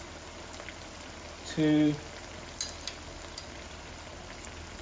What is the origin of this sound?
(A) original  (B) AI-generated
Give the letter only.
A